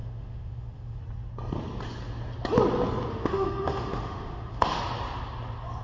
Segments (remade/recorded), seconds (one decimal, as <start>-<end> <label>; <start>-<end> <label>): 0.0-1.0 remade; 1.0-3.1 recorded; 3.1-4.8 remade; 4.8-5.8 recorded